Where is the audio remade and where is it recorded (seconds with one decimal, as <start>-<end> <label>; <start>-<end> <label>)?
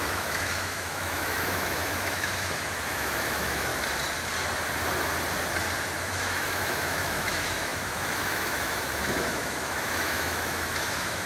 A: 0.0-3.7 remade; 3.7-6.0 recorded; 6.0-11.3 remade